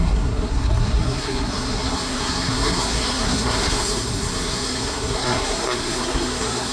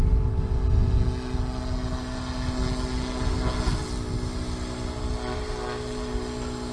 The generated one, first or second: first